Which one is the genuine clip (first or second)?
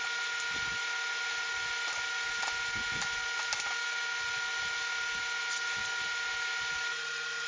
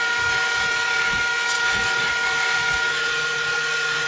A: first